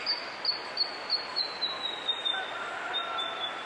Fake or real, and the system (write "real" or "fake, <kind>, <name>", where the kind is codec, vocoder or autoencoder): real